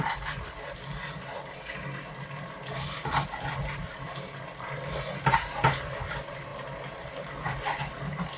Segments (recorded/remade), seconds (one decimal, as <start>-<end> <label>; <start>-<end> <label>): 0.0-8.4 recorded